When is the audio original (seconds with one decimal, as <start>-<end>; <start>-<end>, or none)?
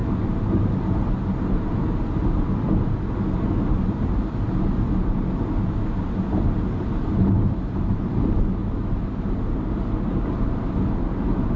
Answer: 0.0-11.6